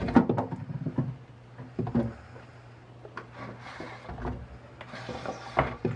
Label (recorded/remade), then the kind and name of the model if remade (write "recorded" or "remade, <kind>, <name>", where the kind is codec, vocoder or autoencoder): recorded